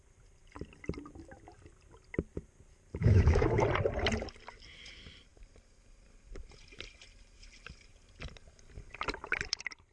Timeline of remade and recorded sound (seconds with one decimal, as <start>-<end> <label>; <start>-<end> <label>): 0.0-2.9 recorded; 2.9-3.6 remade; 3.6-9.9 recorded